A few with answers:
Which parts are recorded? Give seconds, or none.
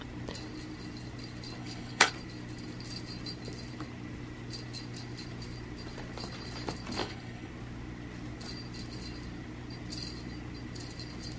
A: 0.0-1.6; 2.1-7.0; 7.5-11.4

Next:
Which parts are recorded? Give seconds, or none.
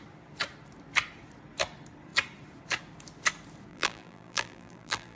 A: 0.0-3.7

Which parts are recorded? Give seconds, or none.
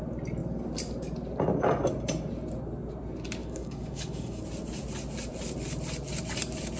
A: 0.0-3.4; 4.4-6.8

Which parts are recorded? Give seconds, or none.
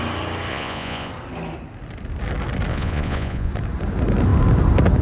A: 0.0-0.5; 1.1-2.7; 3.5-5.0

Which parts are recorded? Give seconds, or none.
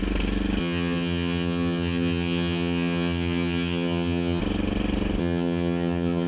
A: 0.0-0.6; 4.4-5.2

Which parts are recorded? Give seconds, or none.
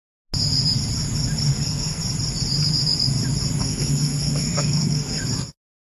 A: 0.0-1.5; 2.0-3.6; 5.2-6.0